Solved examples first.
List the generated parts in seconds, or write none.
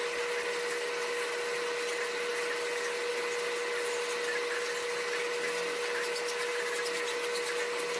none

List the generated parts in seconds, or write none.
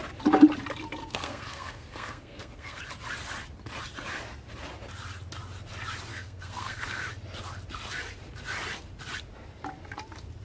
1.0-2.8 (codec, SNAC); 6.1-7.0